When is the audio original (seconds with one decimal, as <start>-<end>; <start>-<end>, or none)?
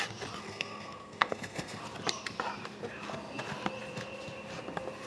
0.0-0.4; 1.8-5.1